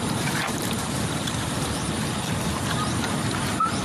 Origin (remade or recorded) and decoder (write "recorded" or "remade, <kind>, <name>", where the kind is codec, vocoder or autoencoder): remade, vocoder, BigVGAN v2